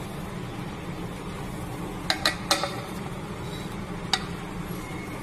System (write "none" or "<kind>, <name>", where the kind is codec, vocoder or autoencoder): none